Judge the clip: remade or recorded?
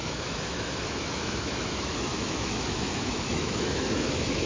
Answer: remade